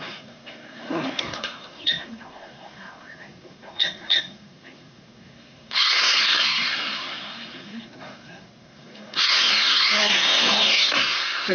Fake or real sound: fake